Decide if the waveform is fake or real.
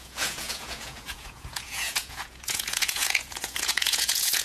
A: fake